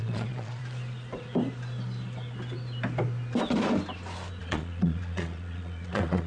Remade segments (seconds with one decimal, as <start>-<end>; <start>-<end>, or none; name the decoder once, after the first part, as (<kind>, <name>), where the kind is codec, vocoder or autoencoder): 0.0-0.6 (vocoder, Vocos); 4.4-6.3